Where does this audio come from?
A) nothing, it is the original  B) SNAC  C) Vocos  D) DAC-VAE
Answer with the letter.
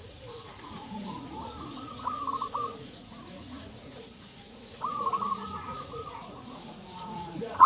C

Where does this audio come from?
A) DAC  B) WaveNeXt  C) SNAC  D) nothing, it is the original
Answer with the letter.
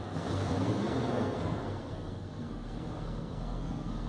C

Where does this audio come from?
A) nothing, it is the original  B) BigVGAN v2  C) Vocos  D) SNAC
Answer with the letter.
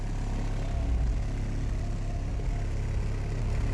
A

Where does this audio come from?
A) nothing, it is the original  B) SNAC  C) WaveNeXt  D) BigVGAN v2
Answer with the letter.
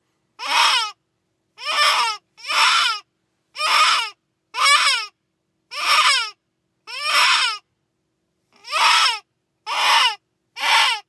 A